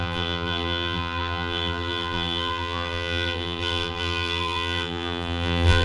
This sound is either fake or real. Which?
fake